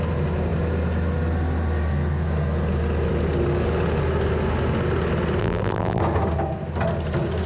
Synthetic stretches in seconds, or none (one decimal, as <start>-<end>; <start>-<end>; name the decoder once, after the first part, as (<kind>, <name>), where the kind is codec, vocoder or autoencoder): 5.4-6.0 (vocoder, BigVGAN v2)